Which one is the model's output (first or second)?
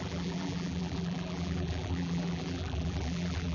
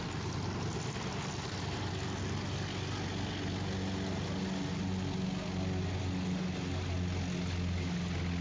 first